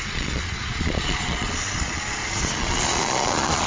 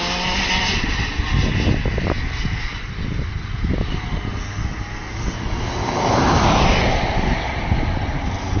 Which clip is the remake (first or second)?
first